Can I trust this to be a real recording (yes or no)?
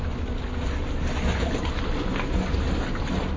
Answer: yes